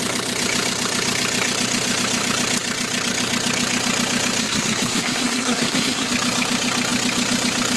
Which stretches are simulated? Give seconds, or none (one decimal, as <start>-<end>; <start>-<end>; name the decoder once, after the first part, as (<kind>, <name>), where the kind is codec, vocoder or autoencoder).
4.4-6.1 (codec, SNAC)